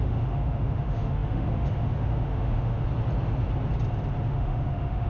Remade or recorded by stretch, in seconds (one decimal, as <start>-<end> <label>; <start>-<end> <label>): 0.0-2.8 remade; 2.8-4.3 recorded; 4.3-5.1 remade